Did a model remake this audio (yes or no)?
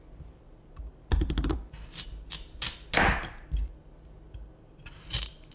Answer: no